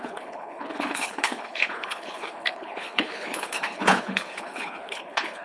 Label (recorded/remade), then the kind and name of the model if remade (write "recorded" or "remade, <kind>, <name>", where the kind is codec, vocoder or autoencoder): remade, codec, HILCodec